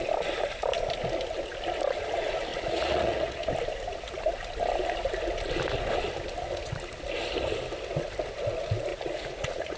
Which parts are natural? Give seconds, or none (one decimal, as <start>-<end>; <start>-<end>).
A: 0.0-2.5; 3.5-8.9